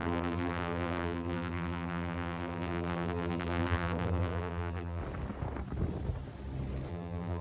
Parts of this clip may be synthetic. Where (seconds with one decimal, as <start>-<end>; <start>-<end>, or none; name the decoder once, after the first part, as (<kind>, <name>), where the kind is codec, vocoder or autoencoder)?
0.0-5.0 (vocoder, BigVGAN v2); 6.9-7.4